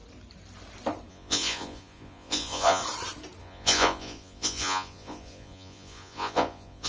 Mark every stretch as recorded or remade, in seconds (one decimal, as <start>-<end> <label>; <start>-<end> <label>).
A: 0.0-1.1 recorded; 1.1-2.8 remade; 2.8-3.4 recorded; 3.4-6.9 remade